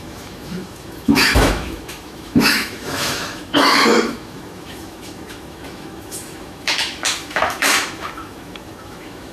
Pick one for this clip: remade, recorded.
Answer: remade